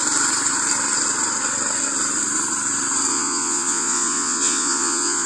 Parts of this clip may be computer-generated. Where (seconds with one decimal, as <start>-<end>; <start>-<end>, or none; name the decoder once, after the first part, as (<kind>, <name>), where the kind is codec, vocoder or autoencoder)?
3.1-5.3 (vocoder, Vocos)